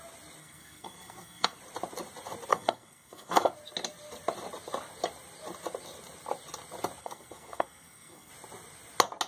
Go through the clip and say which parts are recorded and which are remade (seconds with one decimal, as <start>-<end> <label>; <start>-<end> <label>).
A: 0.0-0.4 recorded; 0.4-1.6 remade; 1.6-2.5 recorded; 2.5-3.5 remade; 3.5-7.0 recorded; 7.0-8.3 remade; 8.3-9.3 recorded